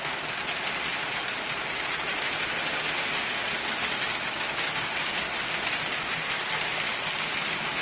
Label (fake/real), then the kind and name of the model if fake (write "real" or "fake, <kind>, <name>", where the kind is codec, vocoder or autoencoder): real